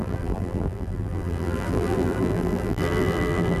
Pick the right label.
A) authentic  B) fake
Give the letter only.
B